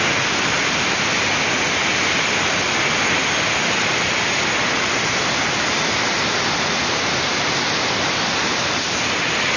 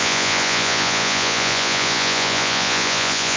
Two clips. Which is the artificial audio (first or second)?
second